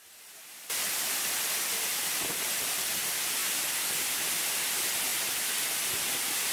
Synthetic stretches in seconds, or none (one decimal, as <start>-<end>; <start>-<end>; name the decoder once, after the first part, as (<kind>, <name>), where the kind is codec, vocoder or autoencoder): none